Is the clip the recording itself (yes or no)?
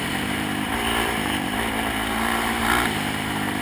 no